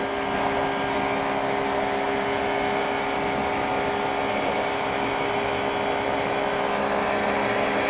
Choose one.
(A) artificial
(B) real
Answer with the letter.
B